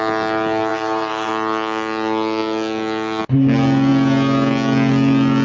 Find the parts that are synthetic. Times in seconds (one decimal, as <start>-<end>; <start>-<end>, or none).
0.7-1.3